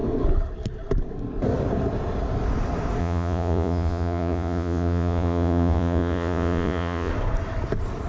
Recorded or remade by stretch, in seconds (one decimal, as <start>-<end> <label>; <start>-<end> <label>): 0.0-3.0 recorded; 3.0-7.1 remade; 7.1-8.1 recorded